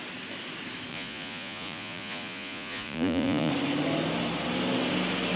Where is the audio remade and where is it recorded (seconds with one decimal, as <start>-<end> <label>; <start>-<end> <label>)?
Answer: 0.0-0.9 recorded; 0.9-3.5 remade; 3.5-5.4 recorded